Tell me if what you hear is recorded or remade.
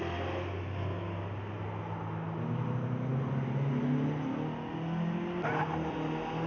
recorded